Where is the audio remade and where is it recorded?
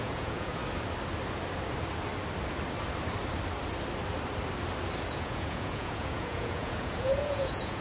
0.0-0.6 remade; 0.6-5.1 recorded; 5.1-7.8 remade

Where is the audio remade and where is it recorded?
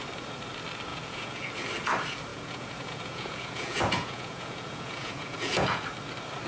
0.0-0.9 recorded; 0.9-1.5 remade; 1.5-2.3 recorded; 2.3-5.8 remade; 5.8-6.5 recorded